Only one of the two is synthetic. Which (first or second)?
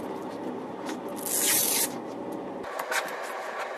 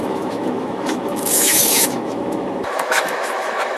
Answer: second